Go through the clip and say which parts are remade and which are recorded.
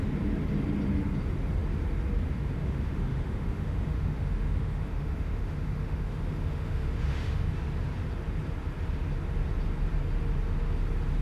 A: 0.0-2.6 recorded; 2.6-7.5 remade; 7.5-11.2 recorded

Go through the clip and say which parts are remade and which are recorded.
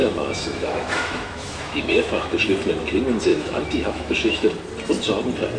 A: 0.0-2.4 remade; 2.4-3.3 recorded; 3.3-4.5 remade; 4.5-5.6 recorded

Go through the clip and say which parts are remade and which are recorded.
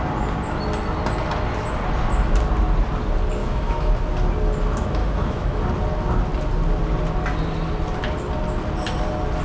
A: 0.0-3.4 recorded; 3.4-3.9 remade; 3.9-5.0 recorded; 5.0-5.6 remade; 5.6-9.4 recorded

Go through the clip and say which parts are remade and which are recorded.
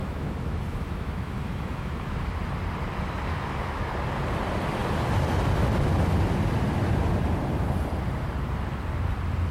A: 0.0-2.4 remade; 2.4-3.3 recorded; 3.3-3.9 remade; 3.9-9.5 recorded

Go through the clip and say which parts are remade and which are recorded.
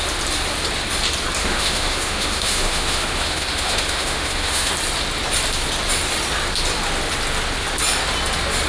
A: 0.0-1.4 recorded; 1.4-4.7 remade; 4.7-8.7 recorded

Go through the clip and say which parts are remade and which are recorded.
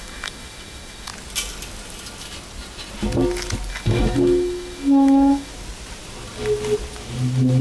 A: 0.0-1.1 remade; 1.1-3.7 recorded; 3.7-5.5 remade; 5.5-7.6 recorded